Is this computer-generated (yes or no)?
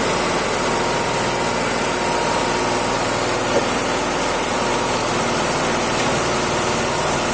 no